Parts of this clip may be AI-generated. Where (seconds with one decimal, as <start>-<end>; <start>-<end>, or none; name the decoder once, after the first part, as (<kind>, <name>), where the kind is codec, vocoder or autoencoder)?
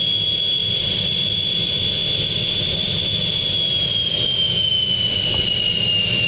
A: none